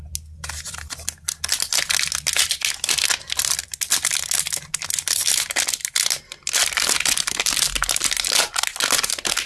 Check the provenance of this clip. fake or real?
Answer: real